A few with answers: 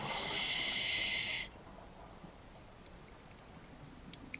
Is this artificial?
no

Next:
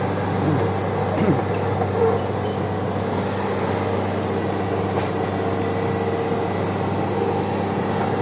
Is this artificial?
no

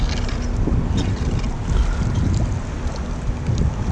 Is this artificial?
no